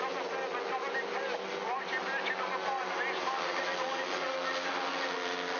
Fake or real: real